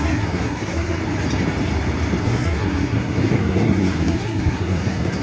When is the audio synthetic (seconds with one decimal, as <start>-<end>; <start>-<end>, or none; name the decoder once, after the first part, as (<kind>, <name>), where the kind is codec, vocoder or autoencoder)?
0.0-1.0 (codec, SNAC); 2.2-5.2